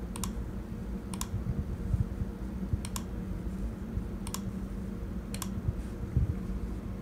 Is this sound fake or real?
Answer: real